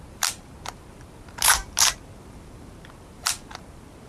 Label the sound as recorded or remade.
remade